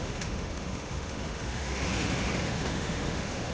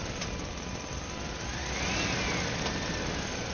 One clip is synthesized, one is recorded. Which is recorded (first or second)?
second